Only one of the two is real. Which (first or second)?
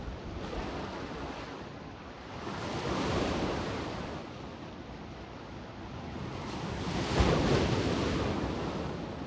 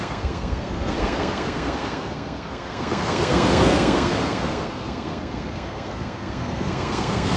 first